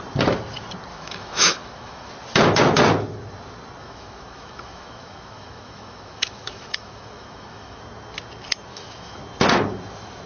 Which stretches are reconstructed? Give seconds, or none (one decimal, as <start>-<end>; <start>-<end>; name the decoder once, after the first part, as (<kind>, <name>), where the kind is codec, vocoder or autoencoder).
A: 0.9-2.1 (autoencoder, DAC-VAE); 3.8-7.8; 8.7-9.2